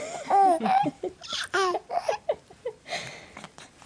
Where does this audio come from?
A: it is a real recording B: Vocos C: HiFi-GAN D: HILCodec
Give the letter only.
A